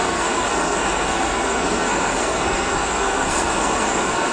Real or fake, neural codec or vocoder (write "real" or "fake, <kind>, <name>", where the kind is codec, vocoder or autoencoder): fake, codec, SNAC